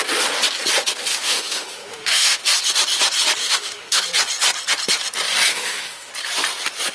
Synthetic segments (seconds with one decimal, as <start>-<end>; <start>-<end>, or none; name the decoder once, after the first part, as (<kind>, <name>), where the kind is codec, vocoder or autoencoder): 1.1-2.4 (autoencoder, DAC-VAE); 3.4-4.0; 5.5-6.1